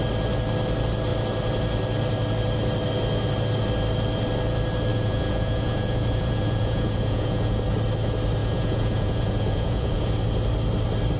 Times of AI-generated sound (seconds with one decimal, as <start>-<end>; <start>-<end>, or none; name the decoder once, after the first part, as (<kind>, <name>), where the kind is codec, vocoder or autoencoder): 4.9-7.6 (vocoder, Vocos); 8.4-10.1